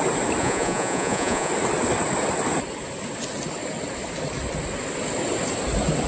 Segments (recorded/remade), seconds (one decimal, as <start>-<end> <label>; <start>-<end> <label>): 0.0-0.4 recorded; 0.4-1.5 remade; 1.5-6.1 recorded